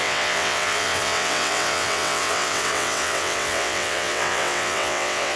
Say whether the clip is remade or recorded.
remade